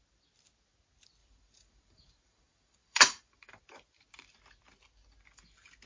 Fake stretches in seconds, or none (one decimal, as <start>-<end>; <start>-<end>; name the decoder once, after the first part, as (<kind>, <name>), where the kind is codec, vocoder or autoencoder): 1.2-3.6 (vocoder, BigVGAN v2)